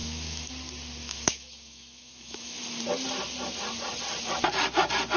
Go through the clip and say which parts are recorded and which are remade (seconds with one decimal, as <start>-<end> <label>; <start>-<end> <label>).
0.0-0.5 remade; 0.5-1.0 recorded; 1.0-2.6 remade; 2.6-5.2 recorded